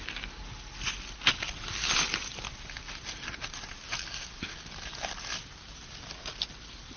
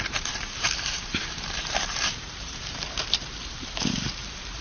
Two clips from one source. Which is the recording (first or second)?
first